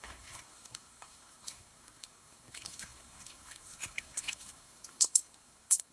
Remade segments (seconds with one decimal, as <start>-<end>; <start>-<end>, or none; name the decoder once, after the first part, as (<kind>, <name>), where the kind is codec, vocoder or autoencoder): 0.0-5.9 (codec, SNAC)